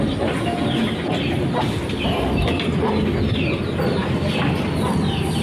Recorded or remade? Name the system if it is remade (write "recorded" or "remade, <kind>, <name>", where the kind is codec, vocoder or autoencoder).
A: recorded